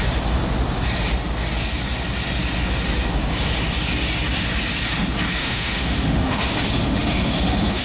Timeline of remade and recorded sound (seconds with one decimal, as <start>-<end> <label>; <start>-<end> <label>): 0.0-5.4 recorded; 5.4-7.8 remade